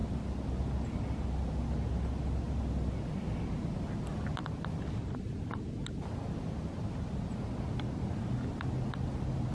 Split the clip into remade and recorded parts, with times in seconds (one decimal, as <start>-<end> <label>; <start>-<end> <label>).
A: 0.0-9.5 recorded